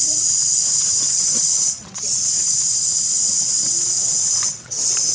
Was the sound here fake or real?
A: fake